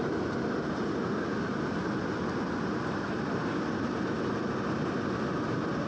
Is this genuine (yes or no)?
yes